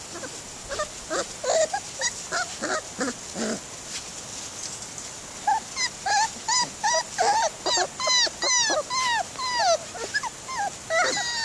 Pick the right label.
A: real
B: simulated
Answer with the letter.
A